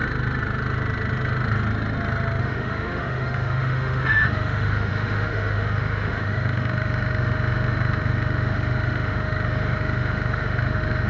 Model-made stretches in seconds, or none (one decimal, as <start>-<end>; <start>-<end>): 2.4-11.1